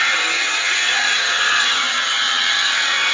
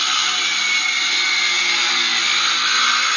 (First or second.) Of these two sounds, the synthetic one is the first